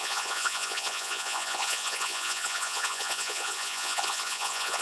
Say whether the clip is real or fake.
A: fake